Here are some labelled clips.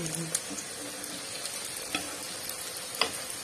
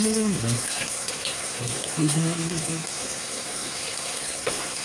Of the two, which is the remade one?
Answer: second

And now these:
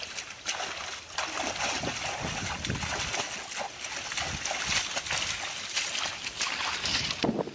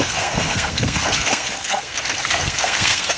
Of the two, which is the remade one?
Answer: second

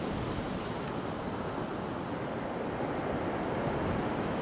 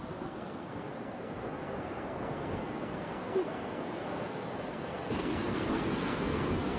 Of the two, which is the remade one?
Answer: second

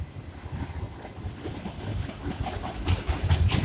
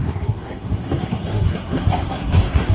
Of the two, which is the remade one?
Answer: second